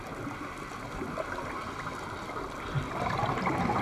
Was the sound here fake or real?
real